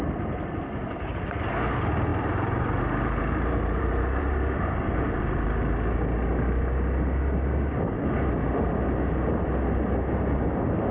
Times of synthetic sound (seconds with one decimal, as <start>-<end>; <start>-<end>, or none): 2.1-5.2